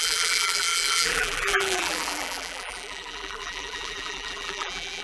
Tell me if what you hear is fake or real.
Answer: fake